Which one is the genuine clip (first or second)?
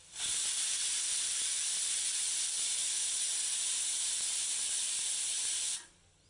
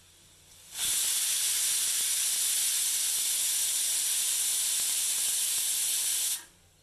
second